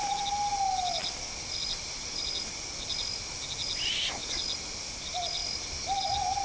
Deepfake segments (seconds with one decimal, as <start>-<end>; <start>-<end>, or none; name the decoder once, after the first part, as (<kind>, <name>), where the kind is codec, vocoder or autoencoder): none